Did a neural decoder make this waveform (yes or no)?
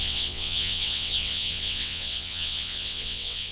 yes